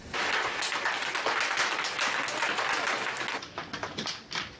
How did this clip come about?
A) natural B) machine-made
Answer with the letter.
A